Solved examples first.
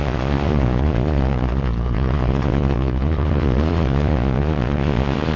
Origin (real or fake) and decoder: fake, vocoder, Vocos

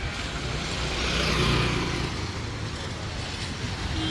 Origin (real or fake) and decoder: real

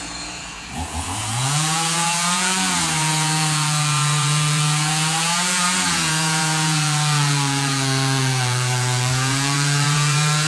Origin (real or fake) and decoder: fake, vocoder, Vocos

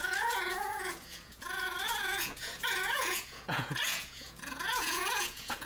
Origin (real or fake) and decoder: fake, vocoder, Vocos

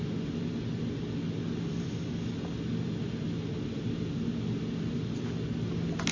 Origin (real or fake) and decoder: real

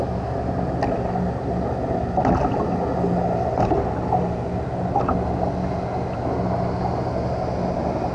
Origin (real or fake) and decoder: real